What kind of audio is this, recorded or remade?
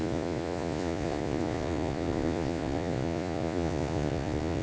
remade